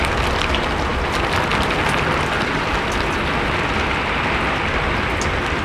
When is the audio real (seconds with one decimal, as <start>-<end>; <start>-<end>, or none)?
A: 0.0-0.9; 2.7-5.6